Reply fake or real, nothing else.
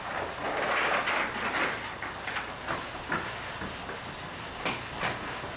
real